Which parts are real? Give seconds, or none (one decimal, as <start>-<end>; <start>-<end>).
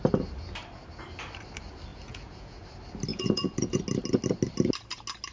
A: 0.0-1.9; 2.6-3.1; 3.8-5.3